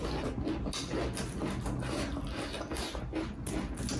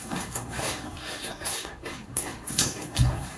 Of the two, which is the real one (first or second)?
first